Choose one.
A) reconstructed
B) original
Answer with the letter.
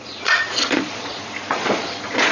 A